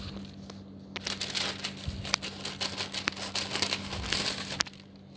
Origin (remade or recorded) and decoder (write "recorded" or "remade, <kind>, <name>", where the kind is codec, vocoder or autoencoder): recorded